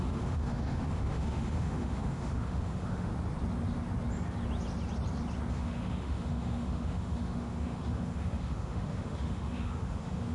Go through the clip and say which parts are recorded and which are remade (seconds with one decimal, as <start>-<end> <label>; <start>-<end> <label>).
0.0-3.1 remade; 3.1-5.5 recorded; 5.5-10.3 remade